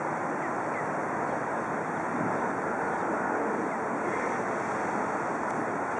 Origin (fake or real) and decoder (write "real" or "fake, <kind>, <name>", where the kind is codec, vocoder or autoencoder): real